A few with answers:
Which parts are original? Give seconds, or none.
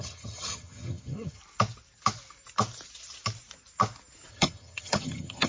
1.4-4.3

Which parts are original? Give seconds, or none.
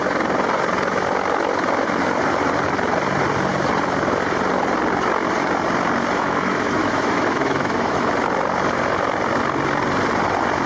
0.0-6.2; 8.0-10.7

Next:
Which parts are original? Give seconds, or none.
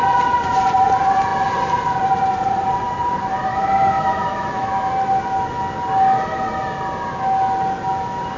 0.0-3.5; 4.9-8.4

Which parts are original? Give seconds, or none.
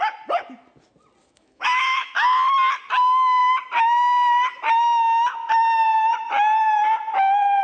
0.0-1.2; 2.1-7.6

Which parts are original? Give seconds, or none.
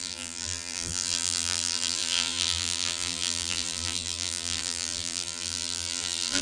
none